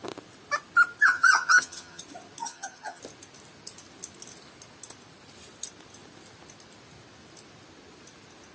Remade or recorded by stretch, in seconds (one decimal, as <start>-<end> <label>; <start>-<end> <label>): 0.0-1.0 recorded; 1.0-2.0 remade; 2.0-2.4 recorded; 2.4-3.0 remade; 3.0-8.5 recorded